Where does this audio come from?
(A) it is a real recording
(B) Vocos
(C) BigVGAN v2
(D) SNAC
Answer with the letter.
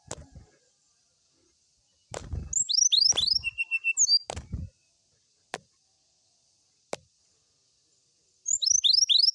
A